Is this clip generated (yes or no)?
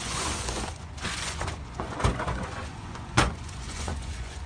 yes